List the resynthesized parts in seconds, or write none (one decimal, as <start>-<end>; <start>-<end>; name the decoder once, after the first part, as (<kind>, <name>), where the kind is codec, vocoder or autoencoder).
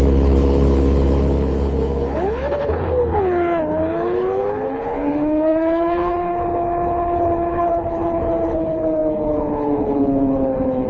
0.0-10.9 (codec, HILCodec)